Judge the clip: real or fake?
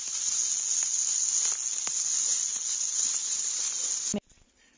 real